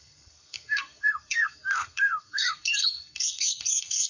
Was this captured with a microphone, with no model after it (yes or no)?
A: no